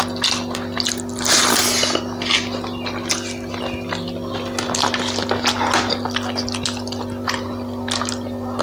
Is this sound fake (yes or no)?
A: no